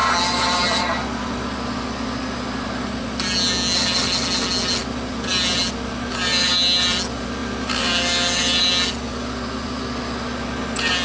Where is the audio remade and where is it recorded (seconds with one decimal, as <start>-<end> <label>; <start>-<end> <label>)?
0.0-11.0 recorded